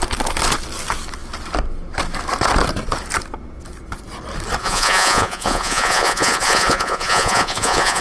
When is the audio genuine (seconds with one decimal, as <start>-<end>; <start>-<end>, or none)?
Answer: 0.0-4.6